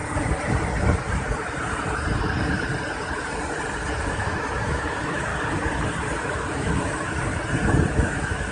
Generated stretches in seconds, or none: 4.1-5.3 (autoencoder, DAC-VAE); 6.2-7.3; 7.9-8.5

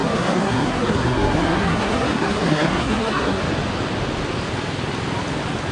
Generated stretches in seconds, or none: 0.0-3.4 (codec, SNAC)

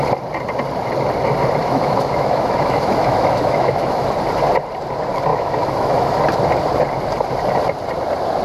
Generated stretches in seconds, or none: 1.6-4.0 (autoencoder, DAC-VAE); 5.3-6.2

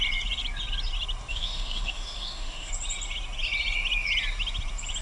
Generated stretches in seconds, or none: 1.3-2.7 (autoencoder, DAC-VAE)

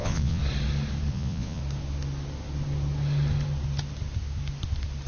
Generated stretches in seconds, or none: 0.0-0.4 (vocoder, Vocos); 1.1-1.6

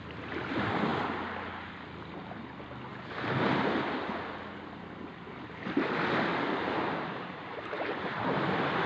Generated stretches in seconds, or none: 6.3-7.9 (vocoder, BigVGAN v2)

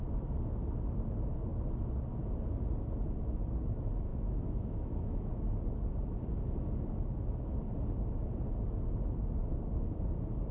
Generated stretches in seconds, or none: 4.1-5.3 (autoencoder, DAC-VAE)